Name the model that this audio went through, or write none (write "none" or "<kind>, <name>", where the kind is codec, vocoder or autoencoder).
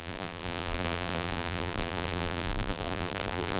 vocoder, BigVGAN v2